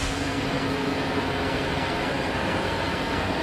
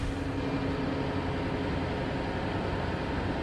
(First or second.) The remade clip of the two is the first